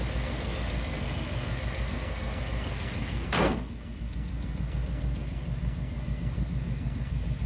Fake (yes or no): yes